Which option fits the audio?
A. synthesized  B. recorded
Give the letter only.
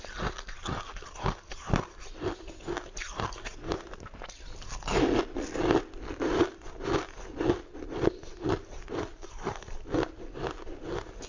B